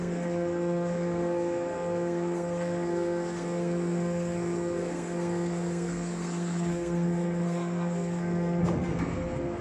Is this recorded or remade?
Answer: remade